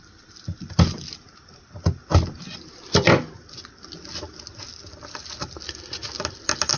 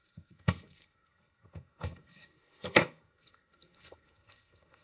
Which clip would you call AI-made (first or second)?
second